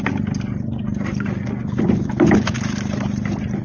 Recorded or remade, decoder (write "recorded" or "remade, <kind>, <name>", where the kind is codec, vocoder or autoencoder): recorded